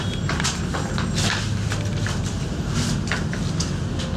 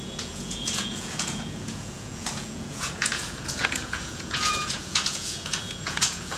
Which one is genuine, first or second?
first